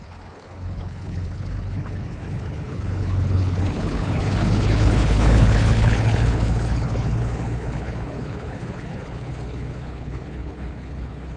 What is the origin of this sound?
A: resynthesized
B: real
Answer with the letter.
A